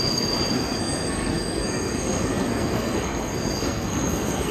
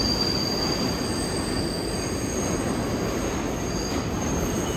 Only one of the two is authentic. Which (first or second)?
second